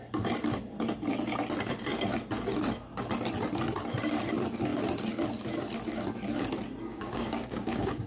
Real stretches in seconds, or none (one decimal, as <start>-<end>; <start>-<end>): 0.0-6.9